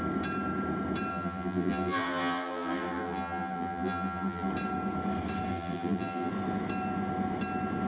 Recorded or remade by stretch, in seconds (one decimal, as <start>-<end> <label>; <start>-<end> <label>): 0.0-1.1 recorded; 1.1-4.5 remade; 4.5-5.5 recorded; 5.5-6.3 remade; 6.3-7.9 recorded